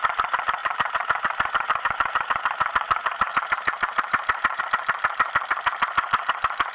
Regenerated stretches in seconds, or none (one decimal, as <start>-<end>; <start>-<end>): 0.6-4.6